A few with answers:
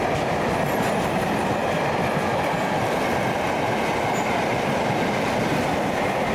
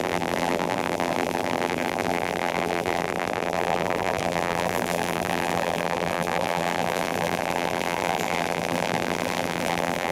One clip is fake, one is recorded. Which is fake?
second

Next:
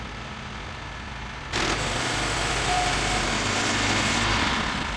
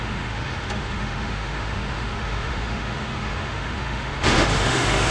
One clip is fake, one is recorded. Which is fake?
second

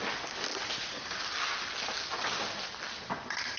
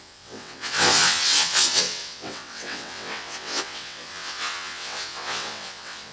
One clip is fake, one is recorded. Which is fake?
second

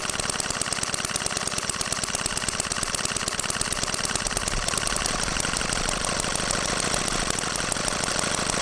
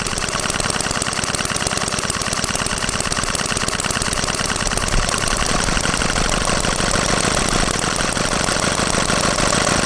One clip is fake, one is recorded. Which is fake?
second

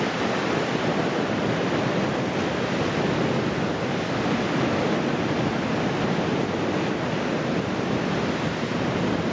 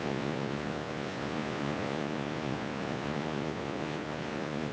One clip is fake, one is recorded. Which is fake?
second